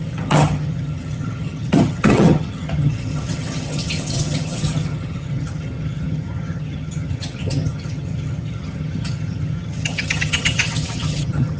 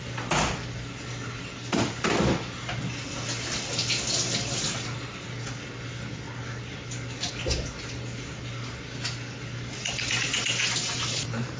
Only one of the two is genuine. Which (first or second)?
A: second